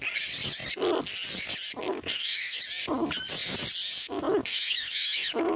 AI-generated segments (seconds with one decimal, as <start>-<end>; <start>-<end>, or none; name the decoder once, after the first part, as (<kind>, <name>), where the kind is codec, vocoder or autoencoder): 1.9-2.6 (autoencoder, DAC-VAE); 4.0-5.6